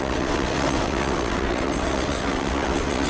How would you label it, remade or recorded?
remade